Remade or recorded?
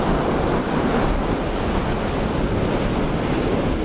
recorded